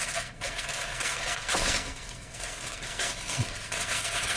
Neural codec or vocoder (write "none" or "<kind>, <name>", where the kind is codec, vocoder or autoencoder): codec, SNAC